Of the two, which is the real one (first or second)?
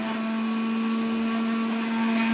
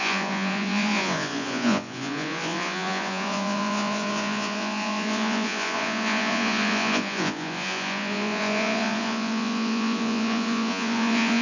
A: first